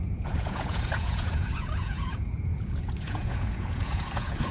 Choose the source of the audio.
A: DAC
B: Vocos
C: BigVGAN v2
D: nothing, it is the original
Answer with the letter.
B